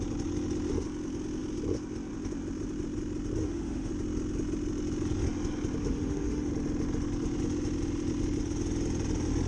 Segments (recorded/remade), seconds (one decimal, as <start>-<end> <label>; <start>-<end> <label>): 0.0-3.4 recorded; 3.4-3.9 remade; 3.9-5.8 recorded; 5.8-6.5 remade; 6.5-9.5 recorded